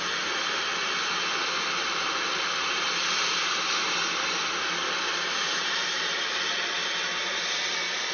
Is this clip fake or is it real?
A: real